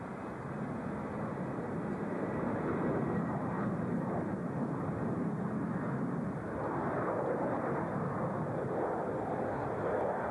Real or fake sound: real